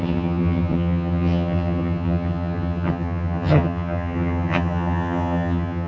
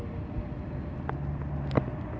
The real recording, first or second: second